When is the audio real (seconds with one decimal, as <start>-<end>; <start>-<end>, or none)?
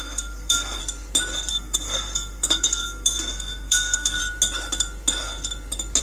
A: 0.8-1.5; 4.2-6.0